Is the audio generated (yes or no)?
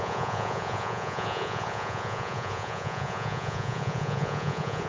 yes